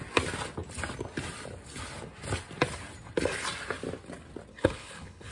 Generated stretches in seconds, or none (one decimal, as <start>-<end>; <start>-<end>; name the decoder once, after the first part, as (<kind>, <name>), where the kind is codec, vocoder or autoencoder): 4.5-5.3 (codec, HILCodec)

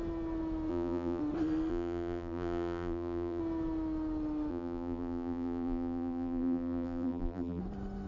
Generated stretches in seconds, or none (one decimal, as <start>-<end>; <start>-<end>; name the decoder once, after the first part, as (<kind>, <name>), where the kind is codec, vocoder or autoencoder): 0.7-1.2 (vocoder, BigVGAN v2); 1.7-3.4; 4.5-7.6

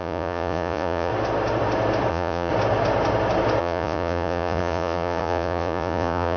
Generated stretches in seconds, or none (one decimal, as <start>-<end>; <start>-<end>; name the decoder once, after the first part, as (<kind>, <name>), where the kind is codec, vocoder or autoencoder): 0.0-1.1 (vocoder, Vocos); 2.1-2.5; 3.6-6.4

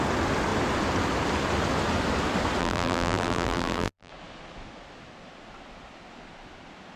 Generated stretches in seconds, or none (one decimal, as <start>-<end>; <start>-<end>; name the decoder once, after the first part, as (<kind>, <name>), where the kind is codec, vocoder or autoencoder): 2.6-4.1 (vocoder, BigVGAN v2)

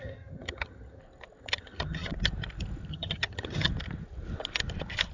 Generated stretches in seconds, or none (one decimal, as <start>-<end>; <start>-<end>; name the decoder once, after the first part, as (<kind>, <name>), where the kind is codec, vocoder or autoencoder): 0.0-1.0 (vocoder, HiFi-GAN); 1.4-2.1; 2.9-3.7

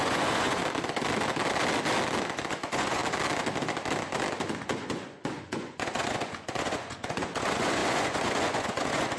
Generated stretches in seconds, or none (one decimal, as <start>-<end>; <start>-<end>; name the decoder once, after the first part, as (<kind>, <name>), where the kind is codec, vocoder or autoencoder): 0.0-0.6 (vocoder, Vocos); 2.5-3.0; 4.6-9.2

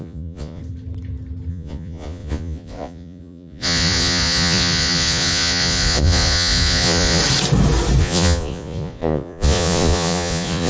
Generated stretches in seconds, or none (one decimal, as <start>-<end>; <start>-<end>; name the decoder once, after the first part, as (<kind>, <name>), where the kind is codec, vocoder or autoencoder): 0.0-0.6 (vocoder, Vocos); 1.5-7.2; 8.0-10.7